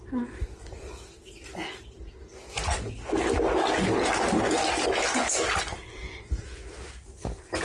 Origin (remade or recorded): recorded